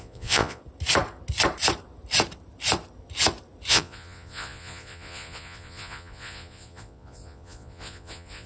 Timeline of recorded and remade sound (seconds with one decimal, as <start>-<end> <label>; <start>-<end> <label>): 0.0-0.6 remade; 0.6-3.7 recorded; 3.7-8.5 remade